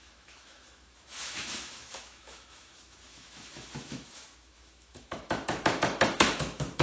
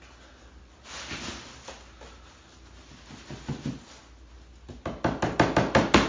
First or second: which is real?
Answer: second